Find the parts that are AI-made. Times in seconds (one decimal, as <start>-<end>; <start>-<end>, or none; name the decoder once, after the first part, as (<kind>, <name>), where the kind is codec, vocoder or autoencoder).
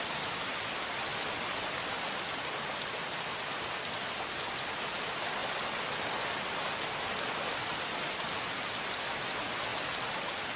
0.5-2.8 (vocoder, BigVGAN v2); 5.4-7.6; 9.7-10.6